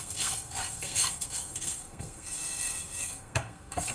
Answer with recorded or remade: remade